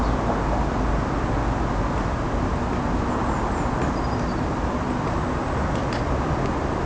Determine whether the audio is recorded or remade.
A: recorded